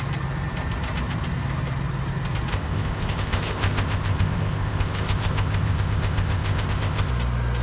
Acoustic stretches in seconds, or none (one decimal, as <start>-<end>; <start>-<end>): 0.0-2.5; 7.1-7.6